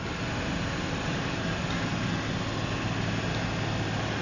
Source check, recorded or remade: recorded